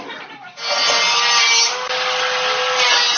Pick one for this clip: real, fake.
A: real